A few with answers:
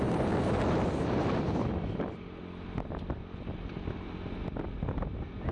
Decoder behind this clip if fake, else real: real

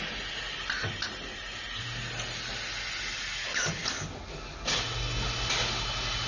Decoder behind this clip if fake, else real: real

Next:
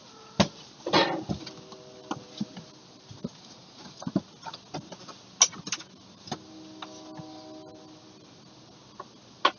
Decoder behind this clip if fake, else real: real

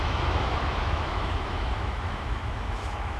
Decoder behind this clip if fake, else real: fake, autoencoder, DAC-VAE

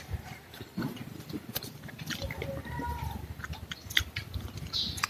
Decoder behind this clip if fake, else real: real